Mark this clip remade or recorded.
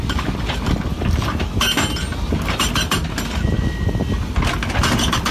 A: recorded